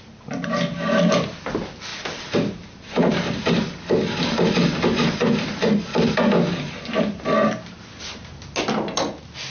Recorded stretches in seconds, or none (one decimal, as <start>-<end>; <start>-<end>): 0.0-9.5